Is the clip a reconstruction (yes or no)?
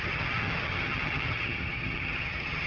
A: yes